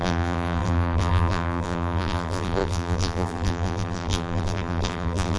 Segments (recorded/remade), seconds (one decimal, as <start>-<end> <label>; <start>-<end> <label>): 0.0-5.4 remade